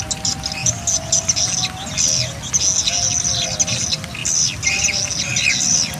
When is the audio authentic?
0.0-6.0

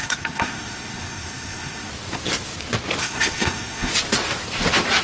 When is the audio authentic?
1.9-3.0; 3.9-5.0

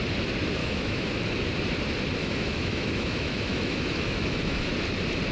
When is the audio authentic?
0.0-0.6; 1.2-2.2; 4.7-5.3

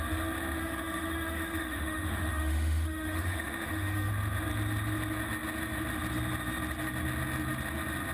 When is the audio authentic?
0.0-0.6; 4.1-8.1

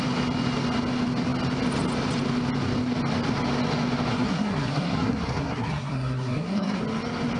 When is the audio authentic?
0.0-4.1; 6.8-7.4

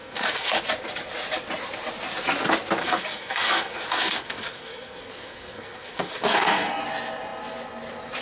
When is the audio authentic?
0.6-2.8; 6.8-8.2

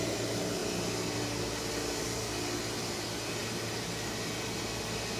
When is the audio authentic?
0.0-5.2